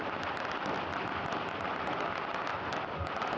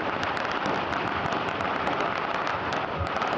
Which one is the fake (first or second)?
second